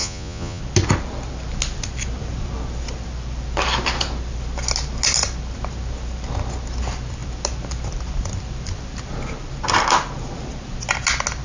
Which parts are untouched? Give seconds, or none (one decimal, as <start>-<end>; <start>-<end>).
0.6-11.4